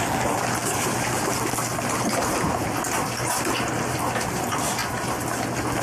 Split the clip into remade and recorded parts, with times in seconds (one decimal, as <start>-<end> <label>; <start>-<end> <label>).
0.0-5.8 recorded